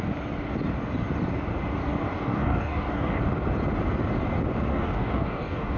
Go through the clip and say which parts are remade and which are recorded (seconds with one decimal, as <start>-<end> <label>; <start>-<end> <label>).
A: 0.0-2.1 recorded; 2.1-3.2 remade; 3.2-4.7 recorded; 4.7-5.8 remade